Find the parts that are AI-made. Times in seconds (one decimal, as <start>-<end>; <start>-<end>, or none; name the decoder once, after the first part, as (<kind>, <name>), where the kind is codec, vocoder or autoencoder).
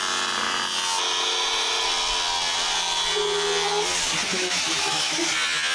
4.3-5.2 (autoencoder, DAC-VAE)